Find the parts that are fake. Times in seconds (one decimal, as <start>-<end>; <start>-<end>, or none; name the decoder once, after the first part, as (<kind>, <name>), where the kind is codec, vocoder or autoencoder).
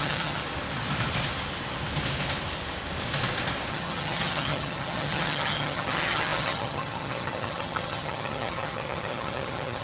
0.0-0.4 (vocoder, HiFi-GAN); 3.7-9.8